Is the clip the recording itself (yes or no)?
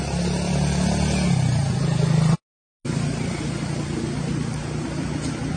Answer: yes